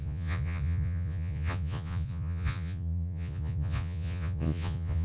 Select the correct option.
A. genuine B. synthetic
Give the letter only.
B